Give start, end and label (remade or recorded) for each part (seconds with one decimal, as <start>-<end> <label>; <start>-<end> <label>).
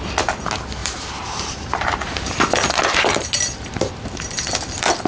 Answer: 0.0-0.8 recorded; 0.8-3.9 remade; 3.9-5.1 recorded